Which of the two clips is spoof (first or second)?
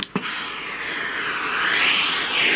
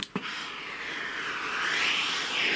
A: second